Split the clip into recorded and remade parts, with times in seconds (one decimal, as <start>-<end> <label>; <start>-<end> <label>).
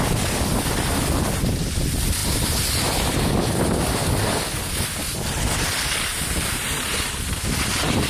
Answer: 0.0-8.1 recorded